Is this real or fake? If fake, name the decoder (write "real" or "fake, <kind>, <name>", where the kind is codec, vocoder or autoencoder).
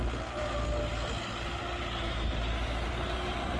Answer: real